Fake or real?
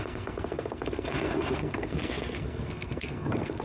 fake